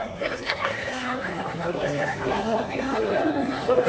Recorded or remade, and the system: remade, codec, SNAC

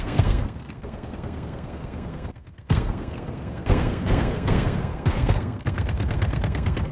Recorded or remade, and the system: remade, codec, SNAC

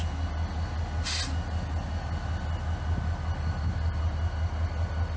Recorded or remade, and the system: recorded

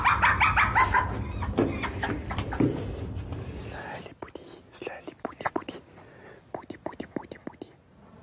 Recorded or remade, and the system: recorded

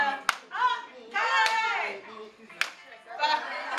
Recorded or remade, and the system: recorded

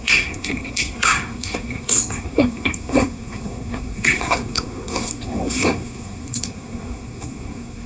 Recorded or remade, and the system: remade, codec, SNAC